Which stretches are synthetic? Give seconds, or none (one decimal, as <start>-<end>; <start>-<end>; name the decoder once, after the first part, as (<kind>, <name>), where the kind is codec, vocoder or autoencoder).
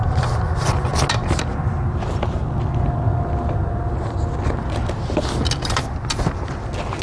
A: none